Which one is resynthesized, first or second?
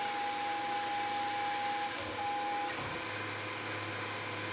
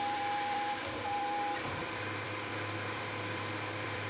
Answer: second